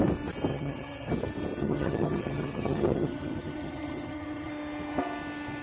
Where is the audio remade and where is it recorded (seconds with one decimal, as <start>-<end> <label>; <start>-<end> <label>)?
0.0-0.5 recorded; 0.5-1.1 remade; 1.1-1.6 recorded; 1.6-4.5 remade; 4.5-5.6 recorded